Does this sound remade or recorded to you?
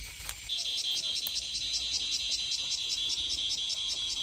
recorded